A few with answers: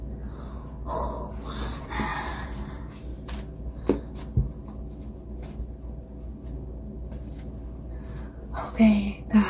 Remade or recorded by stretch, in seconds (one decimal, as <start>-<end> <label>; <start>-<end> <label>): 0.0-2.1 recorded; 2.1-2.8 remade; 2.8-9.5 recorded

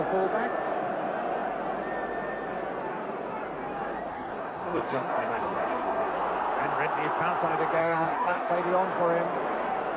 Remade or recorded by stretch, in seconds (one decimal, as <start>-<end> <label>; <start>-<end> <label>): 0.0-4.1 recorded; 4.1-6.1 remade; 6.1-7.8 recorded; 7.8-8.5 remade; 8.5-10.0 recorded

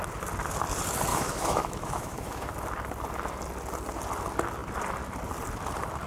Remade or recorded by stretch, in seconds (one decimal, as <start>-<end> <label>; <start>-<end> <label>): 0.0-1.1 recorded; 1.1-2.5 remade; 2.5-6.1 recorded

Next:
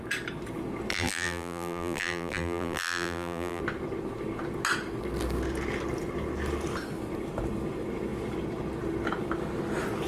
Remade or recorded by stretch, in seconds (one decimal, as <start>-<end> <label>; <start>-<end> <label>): 0.0-0.9 recorded; 0.9-3.6 remade; 3.6-10.1 recorded

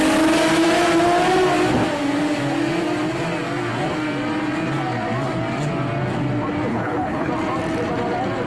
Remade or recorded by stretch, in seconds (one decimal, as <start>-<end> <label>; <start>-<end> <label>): 0.0-6.7 recorded; 6.7-7.3 remade; 7.3-8.5 recorded